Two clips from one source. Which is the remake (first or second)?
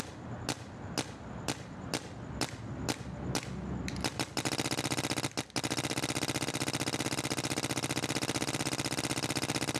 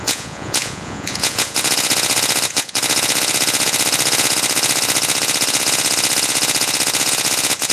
second